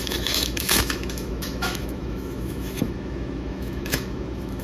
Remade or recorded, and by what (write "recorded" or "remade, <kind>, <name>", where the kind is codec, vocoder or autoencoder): remade, autoencoder, DAC-VAE